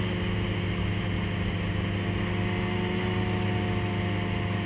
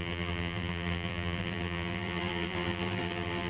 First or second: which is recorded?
first